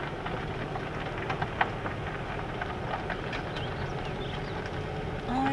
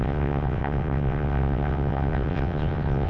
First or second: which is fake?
second